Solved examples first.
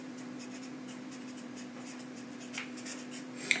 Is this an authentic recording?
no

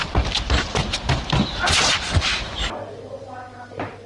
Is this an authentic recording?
yes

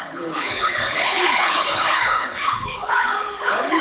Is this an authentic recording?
no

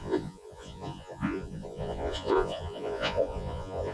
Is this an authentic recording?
no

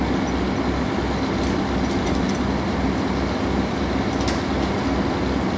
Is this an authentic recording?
yes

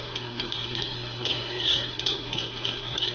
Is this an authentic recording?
no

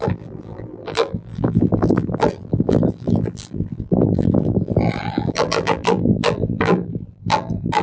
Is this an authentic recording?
no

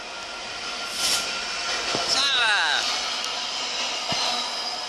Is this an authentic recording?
yes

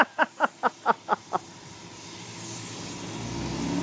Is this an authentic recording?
yes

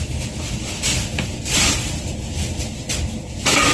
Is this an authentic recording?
yes